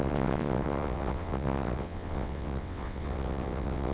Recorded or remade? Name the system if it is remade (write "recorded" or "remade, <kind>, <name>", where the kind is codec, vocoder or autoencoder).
remade, vocoder, WaveNeXt